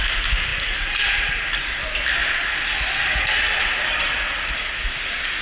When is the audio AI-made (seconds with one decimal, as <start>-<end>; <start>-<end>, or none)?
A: none